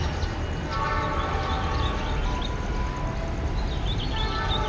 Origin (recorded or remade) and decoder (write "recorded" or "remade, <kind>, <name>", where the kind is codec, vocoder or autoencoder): recorded